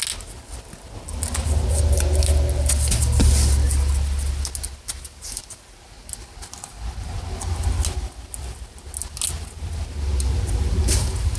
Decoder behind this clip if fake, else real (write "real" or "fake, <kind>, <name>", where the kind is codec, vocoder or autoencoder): real